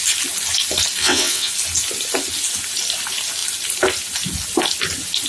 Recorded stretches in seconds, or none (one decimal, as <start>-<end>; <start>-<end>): 0.0-1.0; 1.5-5.3